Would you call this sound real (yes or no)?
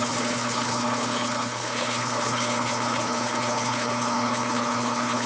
no